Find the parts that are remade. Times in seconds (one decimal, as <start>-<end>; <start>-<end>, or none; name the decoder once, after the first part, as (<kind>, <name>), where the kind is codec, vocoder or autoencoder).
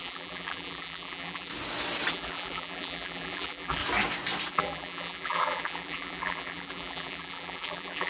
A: 0.0-1.5 (vocoder, BigVGAN v2); 2.1-3.8; 4.5-8.1